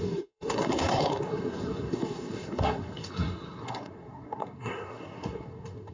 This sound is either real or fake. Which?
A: fake